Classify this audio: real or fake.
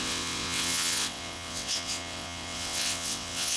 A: fake